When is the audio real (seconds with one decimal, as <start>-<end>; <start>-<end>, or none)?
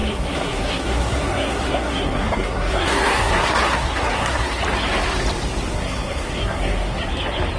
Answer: 4.6-5.7; 7.1-7.6